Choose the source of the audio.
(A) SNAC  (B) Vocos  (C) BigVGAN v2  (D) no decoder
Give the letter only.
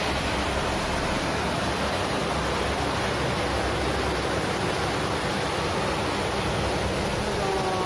D